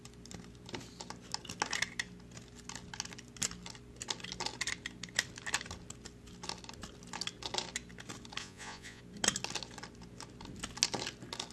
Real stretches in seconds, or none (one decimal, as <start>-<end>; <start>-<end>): 0.0-8.4; 9.0-11.5

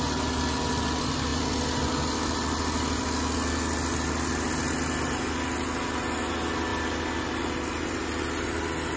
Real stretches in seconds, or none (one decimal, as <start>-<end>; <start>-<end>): 0.0-9.0